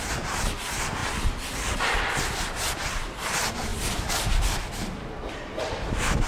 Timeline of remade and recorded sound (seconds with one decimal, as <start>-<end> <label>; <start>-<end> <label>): 0.0-6.3 recorded